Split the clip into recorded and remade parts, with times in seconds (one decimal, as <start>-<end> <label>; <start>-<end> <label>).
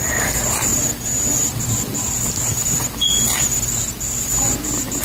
0.0-5.0 recorded